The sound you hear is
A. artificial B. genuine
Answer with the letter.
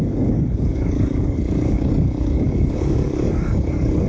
A